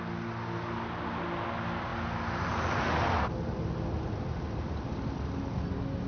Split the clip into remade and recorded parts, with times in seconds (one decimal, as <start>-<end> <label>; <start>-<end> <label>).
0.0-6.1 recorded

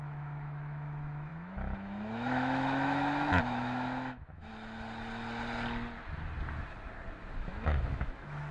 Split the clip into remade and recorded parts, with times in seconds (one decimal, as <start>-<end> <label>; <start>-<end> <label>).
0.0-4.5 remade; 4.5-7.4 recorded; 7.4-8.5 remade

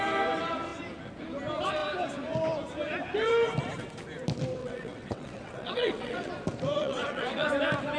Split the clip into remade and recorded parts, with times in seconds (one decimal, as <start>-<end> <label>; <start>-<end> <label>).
0.0-4.6 recorded; 4.6-6.3 remade; 6.3-6.8 recorded; 6.8-7.5 remade; 7.5-8.0 recorded